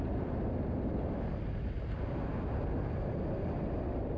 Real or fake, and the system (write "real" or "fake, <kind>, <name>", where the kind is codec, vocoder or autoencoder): real